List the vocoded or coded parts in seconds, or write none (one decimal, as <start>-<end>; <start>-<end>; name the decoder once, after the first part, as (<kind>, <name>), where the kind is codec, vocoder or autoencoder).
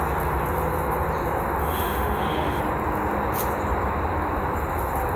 1.6-2.6 (autoencoder, DAC-VAE)